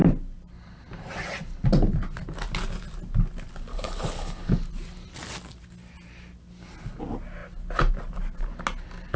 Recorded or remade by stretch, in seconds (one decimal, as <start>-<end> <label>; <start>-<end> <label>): 0.0-3.7 recorded; 3.7-4.5 remade; 4.5-9.2 recorded